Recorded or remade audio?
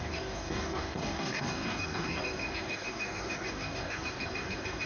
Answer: remade